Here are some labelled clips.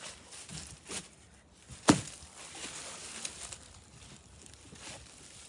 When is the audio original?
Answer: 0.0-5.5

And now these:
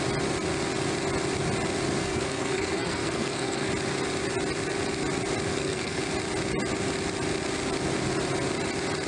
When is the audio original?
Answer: 0.0-2.0; 3.7-5.5; 6.0-9.1

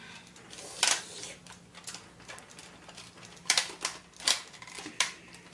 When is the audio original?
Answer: 0.0-5.5

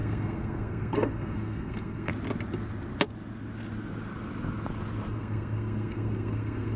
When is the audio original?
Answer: 2.1-5.1

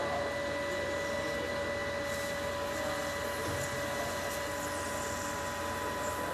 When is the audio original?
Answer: 0.0-6.3

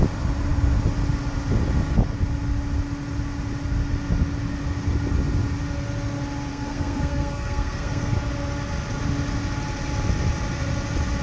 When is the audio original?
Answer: 0.0-6.5; 8.1-11.2

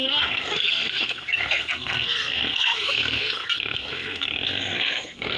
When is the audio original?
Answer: none

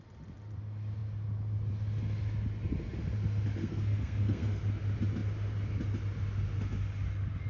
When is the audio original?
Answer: 0.0-3.6; 4.6-7.5